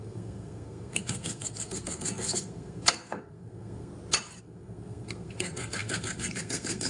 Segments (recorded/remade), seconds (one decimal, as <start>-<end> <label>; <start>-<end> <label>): 0.0-3.9 remade; 3.9-4.4 recorded; 4.4-6.9 remade